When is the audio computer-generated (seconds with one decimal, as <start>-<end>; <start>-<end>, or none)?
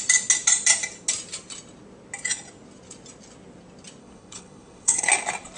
4.0-5.1